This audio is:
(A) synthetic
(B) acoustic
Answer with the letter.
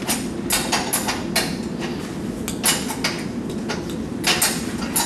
B